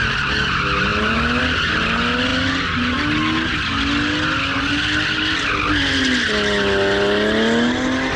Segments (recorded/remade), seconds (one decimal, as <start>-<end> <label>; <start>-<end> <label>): 0.0-8.2 recorded